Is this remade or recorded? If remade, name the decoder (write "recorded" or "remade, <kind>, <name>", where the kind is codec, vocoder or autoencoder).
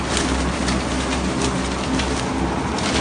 recorded